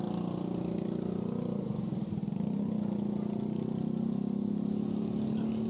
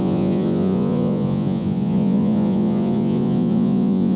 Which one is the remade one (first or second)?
second